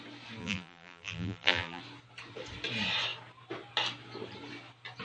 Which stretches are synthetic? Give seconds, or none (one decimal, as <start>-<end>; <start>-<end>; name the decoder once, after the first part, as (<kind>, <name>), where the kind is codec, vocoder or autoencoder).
0.4-1.8 (vocoder, BigVGAN v2)

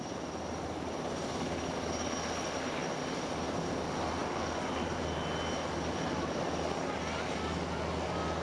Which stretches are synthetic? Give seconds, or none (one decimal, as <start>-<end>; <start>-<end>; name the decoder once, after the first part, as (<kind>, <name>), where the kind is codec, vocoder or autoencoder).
none

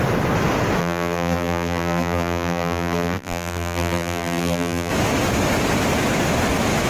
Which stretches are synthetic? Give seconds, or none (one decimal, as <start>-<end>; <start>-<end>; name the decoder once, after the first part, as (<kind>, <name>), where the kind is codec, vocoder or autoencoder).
0.8-4.9 (vocoder, BigVGAN v2)